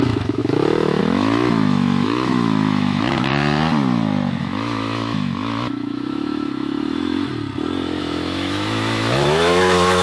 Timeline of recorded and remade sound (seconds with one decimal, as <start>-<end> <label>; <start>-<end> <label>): 0.0-3.3 remade; 3.3-4.4 recorded; 4.4-7.3 remade; 7.3-8.0 recorded; 8.0-10.0 remade